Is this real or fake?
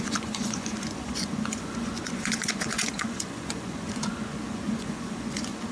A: fake